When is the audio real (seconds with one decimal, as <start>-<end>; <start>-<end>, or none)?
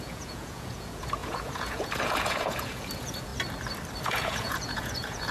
3.3-4.0